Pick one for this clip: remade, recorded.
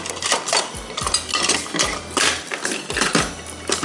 recorded